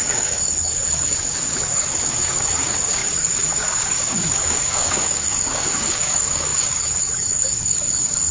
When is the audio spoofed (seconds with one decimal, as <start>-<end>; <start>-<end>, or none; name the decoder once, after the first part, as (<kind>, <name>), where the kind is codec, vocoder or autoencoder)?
0.0-8.3 (codec, DAC)